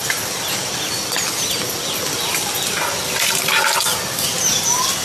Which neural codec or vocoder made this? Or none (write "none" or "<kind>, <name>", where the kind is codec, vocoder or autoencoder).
none